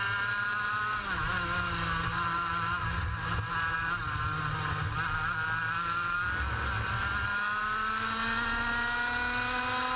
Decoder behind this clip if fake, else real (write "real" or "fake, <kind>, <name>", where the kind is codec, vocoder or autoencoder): real